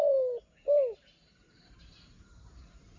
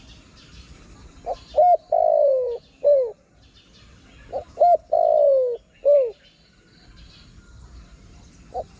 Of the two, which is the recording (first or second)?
second